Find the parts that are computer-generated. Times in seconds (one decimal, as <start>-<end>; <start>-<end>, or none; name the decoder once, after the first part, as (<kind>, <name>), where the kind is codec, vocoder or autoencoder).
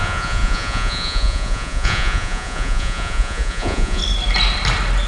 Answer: 0.0-4.0 (vocoder, Vocos)